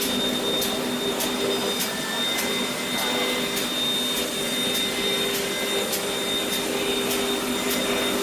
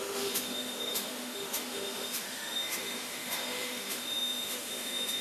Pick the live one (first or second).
first